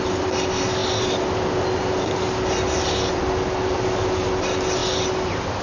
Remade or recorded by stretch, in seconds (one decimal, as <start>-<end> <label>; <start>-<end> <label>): 0.0-5.6 recorded